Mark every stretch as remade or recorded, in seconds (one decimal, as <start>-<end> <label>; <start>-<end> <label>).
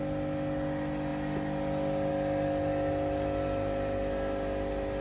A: 0.0-5.0 recorded